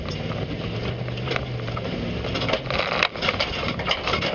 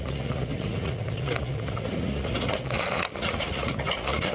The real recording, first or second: first